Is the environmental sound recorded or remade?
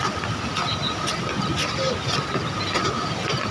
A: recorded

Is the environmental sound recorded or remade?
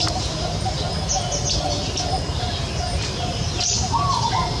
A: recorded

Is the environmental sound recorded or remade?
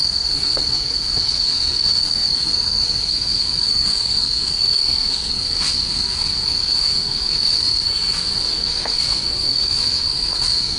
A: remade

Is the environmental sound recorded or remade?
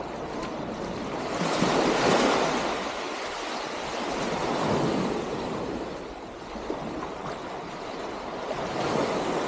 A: recorded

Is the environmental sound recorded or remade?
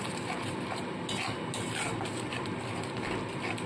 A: recorded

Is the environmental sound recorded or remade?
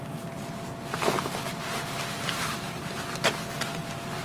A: recorded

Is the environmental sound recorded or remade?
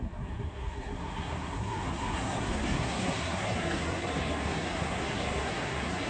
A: remade